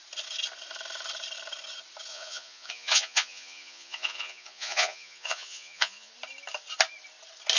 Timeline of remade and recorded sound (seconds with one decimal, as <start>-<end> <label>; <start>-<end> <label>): 0.0-2.1 recorded; 2.1-6.1 remade; 6.1-7.6 recorded